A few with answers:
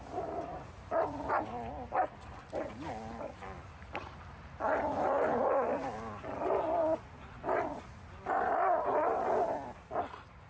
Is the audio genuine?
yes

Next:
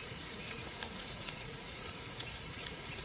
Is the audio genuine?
no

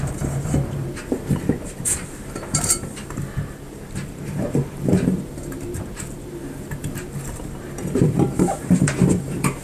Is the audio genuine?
no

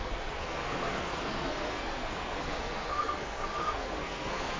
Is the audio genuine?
no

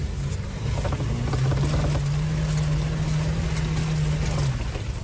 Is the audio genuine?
yes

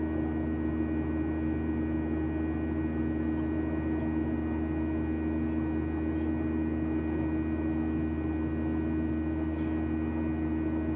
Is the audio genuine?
yes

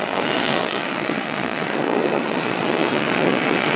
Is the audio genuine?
no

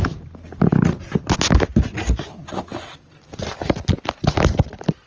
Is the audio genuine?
yes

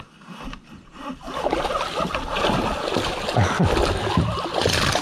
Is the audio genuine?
yes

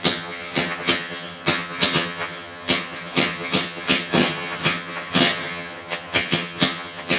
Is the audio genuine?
no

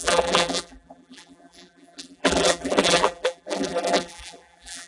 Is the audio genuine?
no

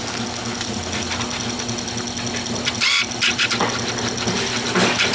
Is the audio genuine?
yes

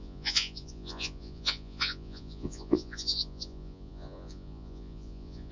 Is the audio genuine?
no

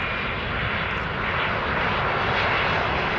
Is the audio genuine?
yes